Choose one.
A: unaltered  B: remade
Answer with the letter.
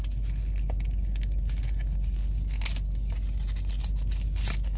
A